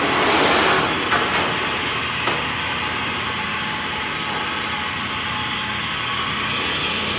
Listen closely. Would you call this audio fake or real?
real